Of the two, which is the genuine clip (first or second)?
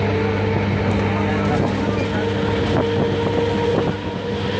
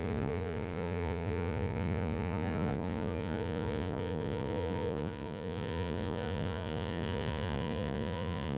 first